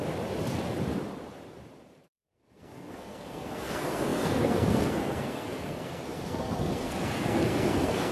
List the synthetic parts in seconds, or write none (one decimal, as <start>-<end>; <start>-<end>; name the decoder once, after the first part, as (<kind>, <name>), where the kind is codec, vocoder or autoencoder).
2.0-8.1 (codec, SNAC)